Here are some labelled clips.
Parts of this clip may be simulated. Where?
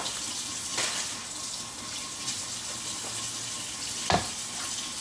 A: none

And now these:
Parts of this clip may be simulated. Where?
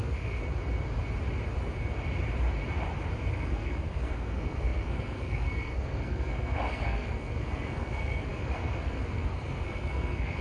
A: 0.0-0.4; 3.3-10.4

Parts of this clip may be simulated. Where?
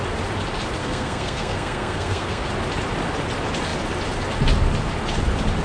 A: 0.8-2.5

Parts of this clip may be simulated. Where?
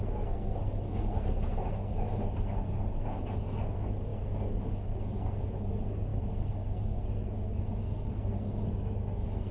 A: 0.0-9.5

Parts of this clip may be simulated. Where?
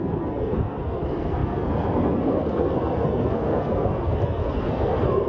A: 0.0-5.3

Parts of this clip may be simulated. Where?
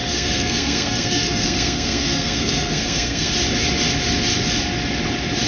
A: 0.0-3.3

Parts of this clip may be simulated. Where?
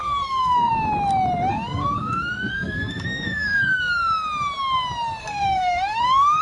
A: 0.0-0.7; 1.5-4.0; 5.2-6.4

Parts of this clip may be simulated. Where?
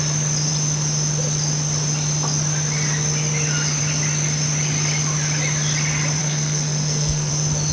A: 6.2-7.3